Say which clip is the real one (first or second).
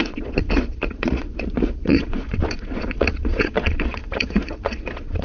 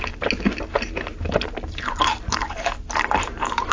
second